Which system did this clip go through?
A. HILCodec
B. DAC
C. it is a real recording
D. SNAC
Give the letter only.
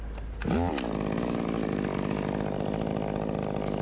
C